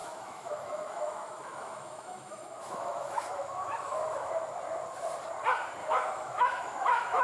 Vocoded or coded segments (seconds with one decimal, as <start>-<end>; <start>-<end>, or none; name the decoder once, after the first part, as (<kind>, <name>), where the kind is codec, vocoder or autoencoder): 0.0-4.3 (autoencoder, DAC-VAE); 5.8-7.2